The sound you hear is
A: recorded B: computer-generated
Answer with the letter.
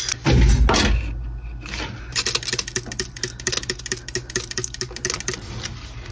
A